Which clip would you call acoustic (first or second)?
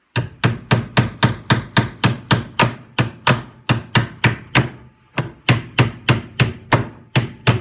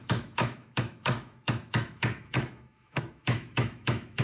first